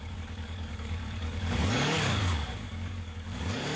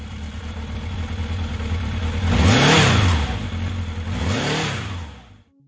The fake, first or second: first